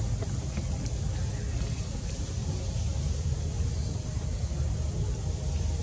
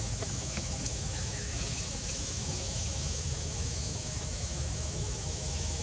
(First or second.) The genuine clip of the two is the first